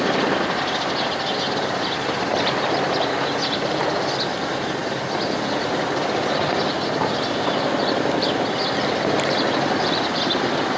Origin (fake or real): real